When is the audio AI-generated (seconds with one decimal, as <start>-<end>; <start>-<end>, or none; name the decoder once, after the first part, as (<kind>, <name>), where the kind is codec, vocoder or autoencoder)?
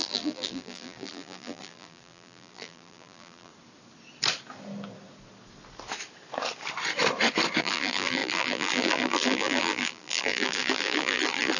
0.0-3.5 (vocoder, BigVGAN v2); 7.6-11.6